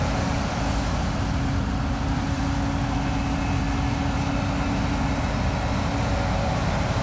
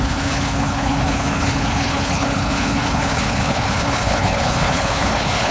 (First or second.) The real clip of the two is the first